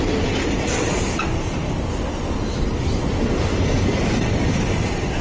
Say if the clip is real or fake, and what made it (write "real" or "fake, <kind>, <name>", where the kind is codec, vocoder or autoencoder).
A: real